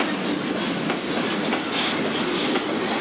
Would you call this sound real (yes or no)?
yes